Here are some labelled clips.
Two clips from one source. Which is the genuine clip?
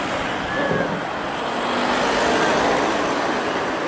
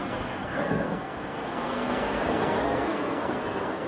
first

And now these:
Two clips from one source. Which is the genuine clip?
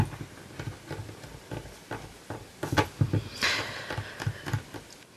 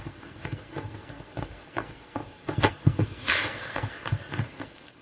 first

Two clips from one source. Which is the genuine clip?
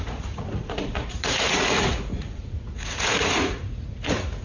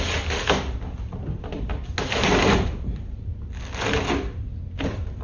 second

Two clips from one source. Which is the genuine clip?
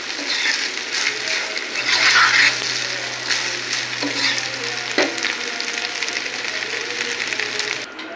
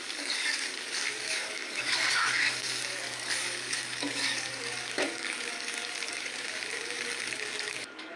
first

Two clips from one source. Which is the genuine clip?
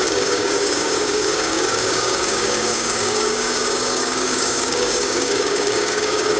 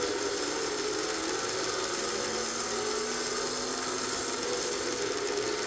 second